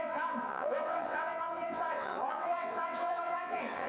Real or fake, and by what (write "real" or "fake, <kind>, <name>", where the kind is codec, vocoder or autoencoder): fake, vocoder, WaveNeXt